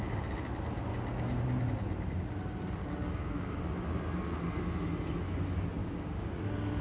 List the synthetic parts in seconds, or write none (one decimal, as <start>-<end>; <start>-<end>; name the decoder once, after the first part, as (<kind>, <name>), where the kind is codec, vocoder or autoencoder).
0.9-1.4 (codec, DAC); 2.8-3.6; 5.8-6.3